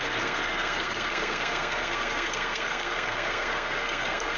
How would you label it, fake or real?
fake